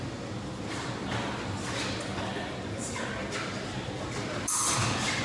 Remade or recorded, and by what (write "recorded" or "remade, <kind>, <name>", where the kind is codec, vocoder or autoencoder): recorded